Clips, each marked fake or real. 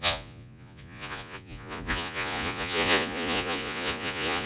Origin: fake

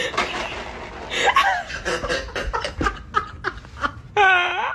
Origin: real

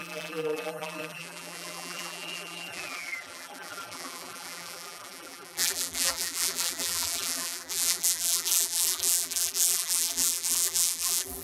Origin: fake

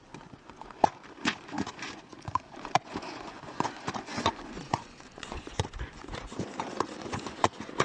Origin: fake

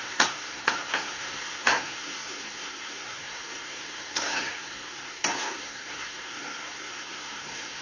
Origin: fake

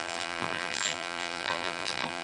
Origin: fake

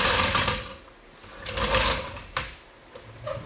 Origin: real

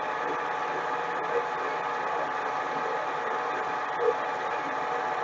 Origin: real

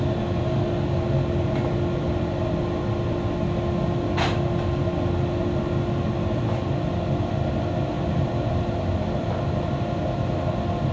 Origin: real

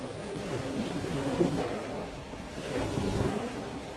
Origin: fake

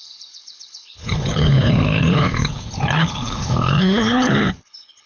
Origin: fake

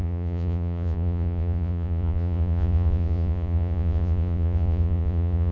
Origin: fake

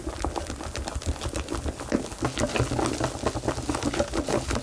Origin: real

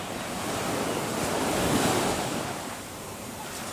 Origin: real